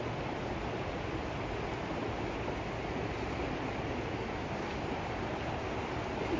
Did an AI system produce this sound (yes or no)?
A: no